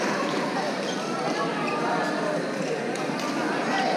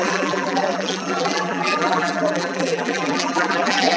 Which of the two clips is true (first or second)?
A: first